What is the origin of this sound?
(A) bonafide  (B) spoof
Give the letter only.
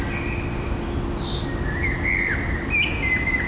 A